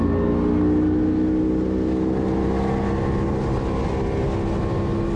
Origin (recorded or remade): recorded